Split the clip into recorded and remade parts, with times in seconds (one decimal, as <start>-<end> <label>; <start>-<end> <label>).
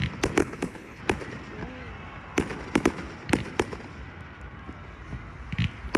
0.0-0.4 recorded; 0.4-1.0 remade; 1.0-6.0 recorded